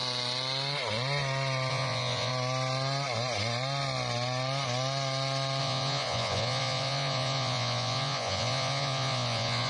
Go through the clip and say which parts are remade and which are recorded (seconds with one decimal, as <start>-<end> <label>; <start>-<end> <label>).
0.0-1.7 recorded; 1.7-2.3 remade; 2.3-5.6 recorded; 5.6-9.7 remade